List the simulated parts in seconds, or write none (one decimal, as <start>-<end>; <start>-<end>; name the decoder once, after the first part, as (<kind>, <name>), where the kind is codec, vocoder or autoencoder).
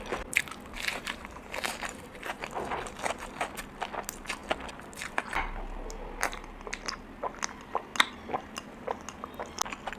0.9-2.4 (vocoder, BigVGAN v2)